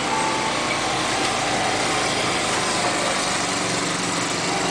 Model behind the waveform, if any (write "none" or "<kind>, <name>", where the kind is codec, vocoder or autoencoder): none